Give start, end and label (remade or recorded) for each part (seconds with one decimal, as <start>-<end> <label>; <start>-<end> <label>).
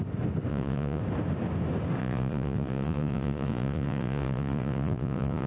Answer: 0.0-0.5 recorded; 0.5-1.0 remade; 1.0-2.0 recorded; 2.0-5.5 remade